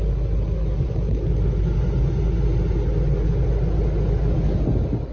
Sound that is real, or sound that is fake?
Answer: real